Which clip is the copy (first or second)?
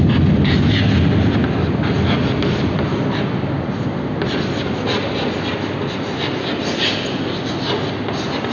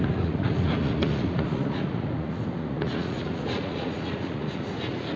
second